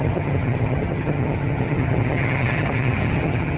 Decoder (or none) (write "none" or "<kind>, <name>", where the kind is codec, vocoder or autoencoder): vocoder, HiFi-GAN